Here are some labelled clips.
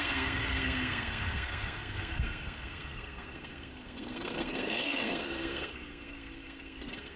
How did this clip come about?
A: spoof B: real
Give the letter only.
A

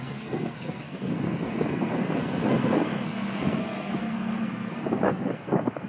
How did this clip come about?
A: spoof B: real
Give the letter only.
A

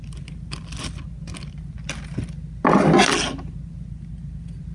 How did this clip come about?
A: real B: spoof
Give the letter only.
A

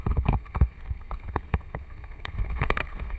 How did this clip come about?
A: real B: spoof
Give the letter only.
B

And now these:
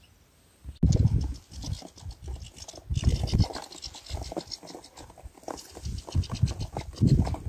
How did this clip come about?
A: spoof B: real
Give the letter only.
B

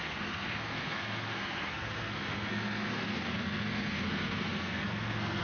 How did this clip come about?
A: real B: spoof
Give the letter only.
B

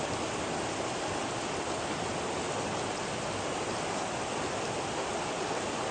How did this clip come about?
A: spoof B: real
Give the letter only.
B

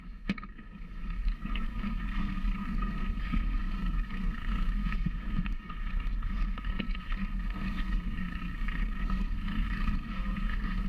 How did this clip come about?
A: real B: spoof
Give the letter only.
B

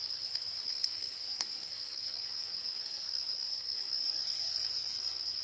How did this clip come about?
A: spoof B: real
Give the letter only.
A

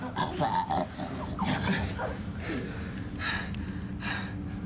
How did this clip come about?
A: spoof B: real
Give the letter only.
B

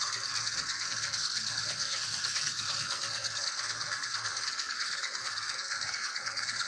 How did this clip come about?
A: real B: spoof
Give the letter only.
B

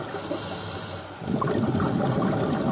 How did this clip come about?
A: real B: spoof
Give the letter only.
A